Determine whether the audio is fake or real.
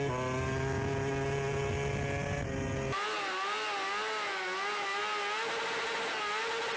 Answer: real